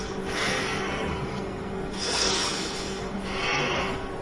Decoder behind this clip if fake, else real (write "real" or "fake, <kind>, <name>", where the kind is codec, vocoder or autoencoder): fake, codec, SNAC